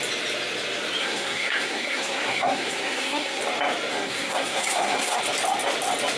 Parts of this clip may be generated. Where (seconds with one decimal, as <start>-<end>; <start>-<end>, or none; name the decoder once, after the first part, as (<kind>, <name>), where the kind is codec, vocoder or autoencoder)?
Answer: 1.0-3.4 (codec, SNAC); 3.9-5.2